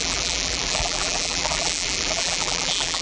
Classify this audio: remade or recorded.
remade